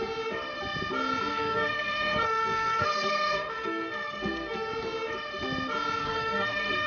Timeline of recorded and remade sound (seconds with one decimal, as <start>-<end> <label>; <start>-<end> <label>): 0.0-1.3 recorded; 1.3-4.7 remade; 4.7-6.0 recorded; 6.0-6.9 remade